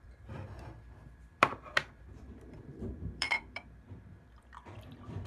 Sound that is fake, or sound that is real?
fake